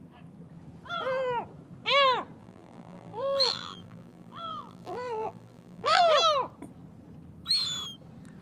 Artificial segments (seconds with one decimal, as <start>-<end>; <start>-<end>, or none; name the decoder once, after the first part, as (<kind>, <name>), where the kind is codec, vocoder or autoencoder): 2.4-6.0 (vocoder, BigVGAN v2)